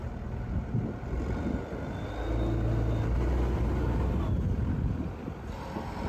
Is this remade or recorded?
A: recorded